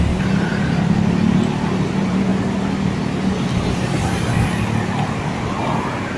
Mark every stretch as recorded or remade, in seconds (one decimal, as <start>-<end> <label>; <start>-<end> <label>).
0.0-0.5 remade; 0.5-1.4 recorded; 1.4-2.3 remade; 2.3-5.4 recorded; 5.4-6.2 remade